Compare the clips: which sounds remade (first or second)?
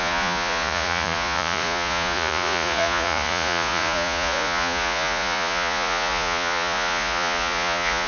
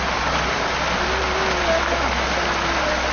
first